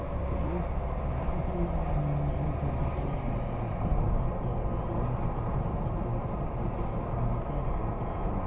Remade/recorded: recorded